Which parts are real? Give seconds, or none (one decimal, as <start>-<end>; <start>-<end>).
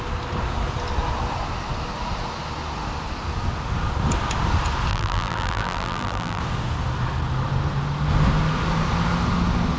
0.0-4.9; 6.4-9.8